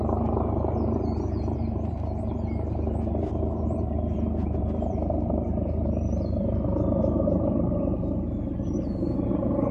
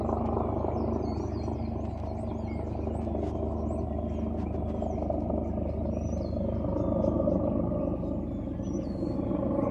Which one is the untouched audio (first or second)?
second